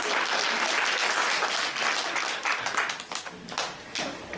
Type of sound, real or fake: real